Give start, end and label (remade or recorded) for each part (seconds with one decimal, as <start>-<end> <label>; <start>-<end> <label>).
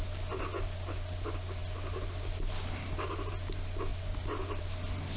0.0-5.2 recorded